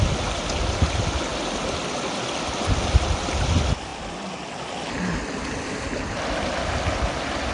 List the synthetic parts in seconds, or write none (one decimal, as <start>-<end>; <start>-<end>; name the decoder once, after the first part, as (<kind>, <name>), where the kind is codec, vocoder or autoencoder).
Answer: none